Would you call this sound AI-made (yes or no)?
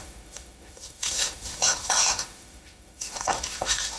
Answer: yes